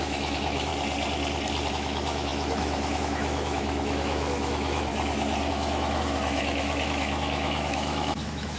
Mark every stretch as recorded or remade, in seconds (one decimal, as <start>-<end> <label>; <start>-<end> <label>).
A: 0.0-0.7 remade; 0.7-1.7 recorded; 1.7-4.9 remade; 4.9-5.5 recorded; 5.5-8.6 remade